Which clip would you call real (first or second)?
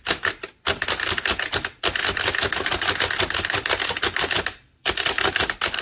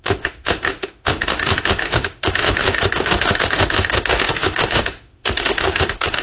first